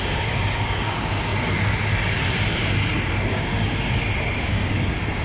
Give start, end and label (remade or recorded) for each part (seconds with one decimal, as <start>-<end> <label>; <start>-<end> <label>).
0.0-1.3 remade; 1.3-4.4 recorded; 4.4-5.2 remade